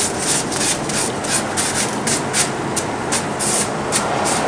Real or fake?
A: real